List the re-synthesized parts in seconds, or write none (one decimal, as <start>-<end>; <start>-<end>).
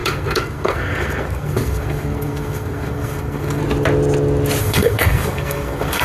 0.0-3.6; 4.6-6.0